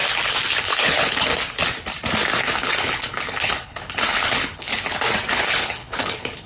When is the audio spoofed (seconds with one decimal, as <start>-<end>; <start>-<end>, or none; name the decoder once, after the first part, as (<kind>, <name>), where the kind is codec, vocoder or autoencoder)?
0.6-1.3 (codec, HILCodec); 2.4-4.7; 5.3-6.5